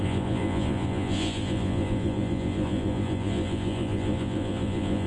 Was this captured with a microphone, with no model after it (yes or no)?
no